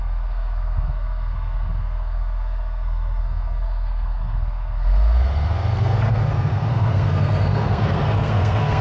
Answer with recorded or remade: remade